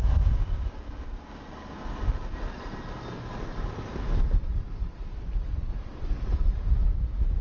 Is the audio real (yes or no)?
yes